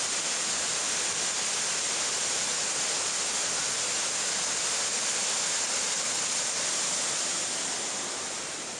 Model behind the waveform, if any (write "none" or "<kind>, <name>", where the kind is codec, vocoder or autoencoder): none